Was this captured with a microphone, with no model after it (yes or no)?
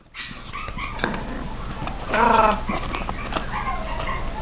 yes